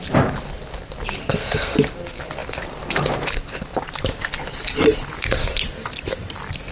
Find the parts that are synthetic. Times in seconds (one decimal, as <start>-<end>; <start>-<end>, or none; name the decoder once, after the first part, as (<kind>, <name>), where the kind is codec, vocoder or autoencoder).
1.2-1.7 (codec, SNAC)